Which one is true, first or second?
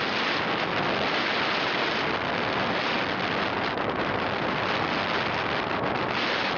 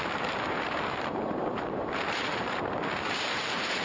first